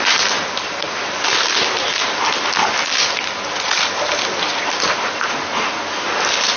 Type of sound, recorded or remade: recorded